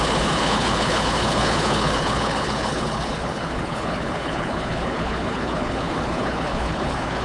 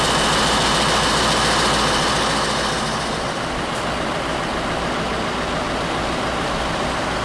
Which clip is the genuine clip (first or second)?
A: second